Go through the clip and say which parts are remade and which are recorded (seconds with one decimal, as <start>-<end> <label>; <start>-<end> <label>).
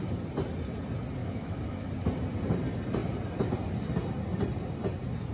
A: 0.0-1.2 recorded; 1.2-1.9 remade; 1.9-5.3 recorded